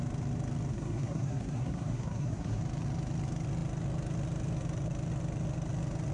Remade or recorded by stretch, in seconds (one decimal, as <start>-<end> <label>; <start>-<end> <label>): 0.0-0.7 recorded; 0.7-2.6 remade; 2.6-6.1 recorded